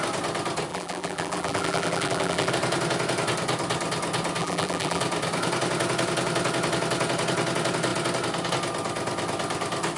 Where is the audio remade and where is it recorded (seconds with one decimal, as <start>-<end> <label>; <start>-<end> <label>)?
0.0-0.7 recorded; 0.7-2.5 remade; 2.5-4.4 recorded; 4.4-5.0 remade; 5.0-10.0 recorded